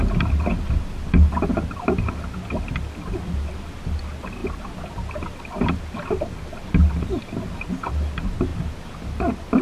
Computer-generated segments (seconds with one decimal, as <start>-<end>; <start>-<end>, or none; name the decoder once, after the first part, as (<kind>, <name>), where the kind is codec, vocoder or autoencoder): none